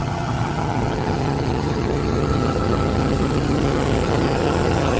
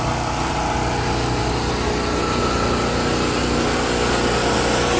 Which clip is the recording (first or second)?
second